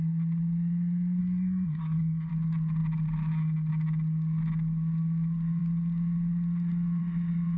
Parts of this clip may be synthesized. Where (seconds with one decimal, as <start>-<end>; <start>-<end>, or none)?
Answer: 1.2-2.3